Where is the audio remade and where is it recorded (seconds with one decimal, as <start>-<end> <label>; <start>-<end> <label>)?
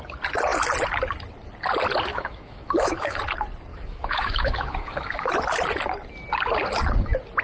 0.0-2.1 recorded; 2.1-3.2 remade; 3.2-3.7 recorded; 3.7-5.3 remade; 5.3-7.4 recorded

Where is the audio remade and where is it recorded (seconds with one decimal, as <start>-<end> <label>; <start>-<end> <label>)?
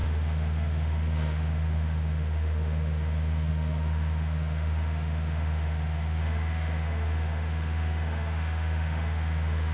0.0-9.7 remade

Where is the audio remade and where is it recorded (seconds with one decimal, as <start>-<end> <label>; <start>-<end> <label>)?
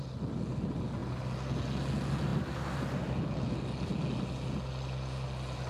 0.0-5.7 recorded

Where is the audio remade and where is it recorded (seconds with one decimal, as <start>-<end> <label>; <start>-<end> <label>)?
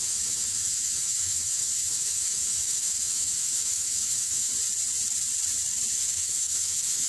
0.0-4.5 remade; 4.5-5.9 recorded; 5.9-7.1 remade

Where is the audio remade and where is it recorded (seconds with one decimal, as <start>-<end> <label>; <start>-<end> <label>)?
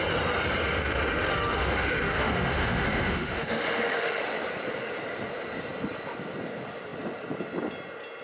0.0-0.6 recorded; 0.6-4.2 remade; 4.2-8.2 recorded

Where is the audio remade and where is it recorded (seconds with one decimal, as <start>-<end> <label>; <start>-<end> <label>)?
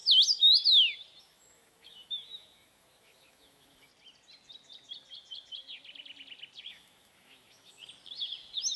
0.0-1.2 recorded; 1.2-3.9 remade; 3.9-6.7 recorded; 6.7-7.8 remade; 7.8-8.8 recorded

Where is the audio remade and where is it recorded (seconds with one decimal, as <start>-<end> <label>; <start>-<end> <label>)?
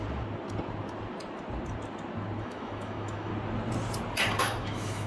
0.0-2.4 recorded; 2.4-3.3 remade; 3.3-4.4 recorded; 4.4-5.1 remade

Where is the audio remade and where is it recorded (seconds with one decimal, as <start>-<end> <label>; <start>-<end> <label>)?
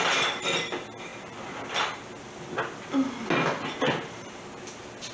0.0-5.1 recorded